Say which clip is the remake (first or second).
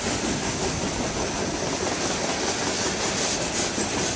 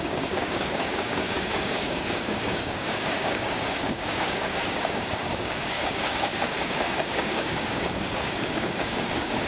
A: second